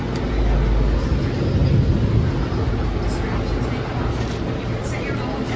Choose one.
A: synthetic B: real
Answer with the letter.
B